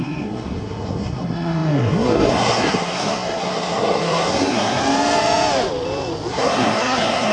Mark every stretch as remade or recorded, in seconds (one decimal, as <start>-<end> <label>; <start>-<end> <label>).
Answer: 0.0-4.8 remade; 4.8-6.3 recorded; 6.3-7.3 remade

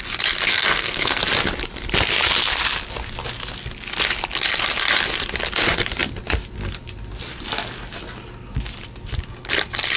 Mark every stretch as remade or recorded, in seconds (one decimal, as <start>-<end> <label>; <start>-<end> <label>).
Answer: 0.0-0.5 recorded; 0.5-1.2 remade; 1.2-10.0 recorded

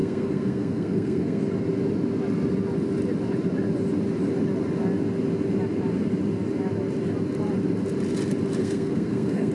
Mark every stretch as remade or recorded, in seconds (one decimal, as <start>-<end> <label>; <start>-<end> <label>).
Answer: 0.0-1.4 remade; 1.4-8.6 recorded; 8.6-9.5 remade

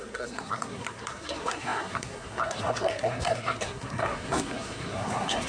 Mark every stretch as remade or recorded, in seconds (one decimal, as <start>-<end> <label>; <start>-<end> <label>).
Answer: 0.0-5.5 remade

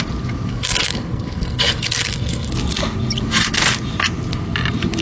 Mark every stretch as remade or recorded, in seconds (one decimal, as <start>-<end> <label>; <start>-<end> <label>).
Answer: 0.0-0.5 recorded; 0.5-2.5 remade; 2.5-5.0 recorded

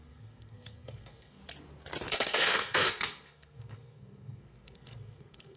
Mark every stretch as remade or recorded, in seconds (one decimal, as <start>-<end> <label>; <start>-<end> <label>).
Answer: 0.0-1.4 remade; 1.4-2.1 recorded; 2.1-5.6 remade

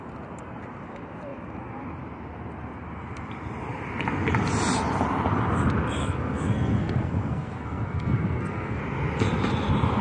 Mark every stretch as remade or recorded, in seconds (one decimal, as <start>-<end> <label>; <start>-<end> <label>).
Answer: 0.0-6.0 recorded; 6.0-8.8 remade; 8.8-10.0 recorded

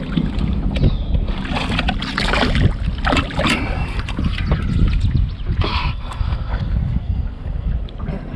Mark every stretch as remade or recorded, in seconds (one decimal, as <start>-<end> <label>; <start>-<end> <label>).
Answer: 0.0-5.7 recorded; 5.7-7.7 remade; 7.7-8.4 recorded